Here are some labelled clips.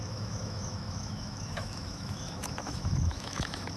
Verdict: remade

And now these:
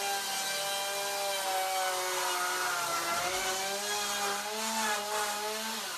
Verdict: recorded